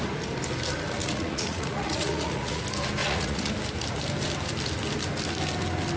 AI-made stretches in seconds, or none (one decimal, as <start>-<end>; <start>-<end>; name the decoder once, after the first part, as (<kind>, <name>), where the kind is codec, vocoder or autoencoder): 1.0-2.6 (vocoder, Vocos); 3.0-3.5